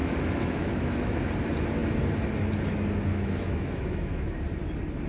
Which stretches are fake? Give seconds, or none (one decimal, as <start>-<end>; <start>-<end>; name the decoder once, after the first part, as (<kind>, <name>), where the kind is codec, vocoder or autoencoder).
0.0-1.2 (autoencoder, DAC-VAE); 3.1-4.3